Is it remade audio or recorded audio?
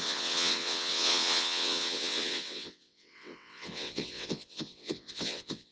remade